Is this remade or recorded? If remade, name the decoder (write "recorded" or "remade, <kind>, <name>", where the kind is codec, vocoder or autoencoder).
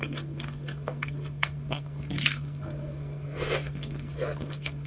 remade, codec, SNAC